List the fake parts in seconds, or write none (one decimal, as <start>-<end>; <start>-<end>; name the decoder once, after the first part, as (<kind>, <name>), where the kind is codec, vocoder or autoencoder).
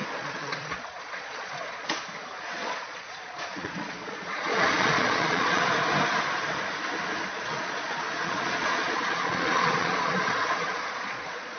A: 0.0-2.0 (vocoder, Vocos); 2.5-5.7; 7.3-11.6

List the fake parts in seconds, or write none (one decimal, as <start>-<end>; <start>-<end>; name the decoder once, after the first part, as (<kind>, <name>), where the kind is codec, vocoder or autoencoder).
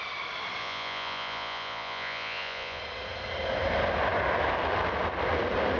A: 0.6-2.8 (vocoder, Vocos)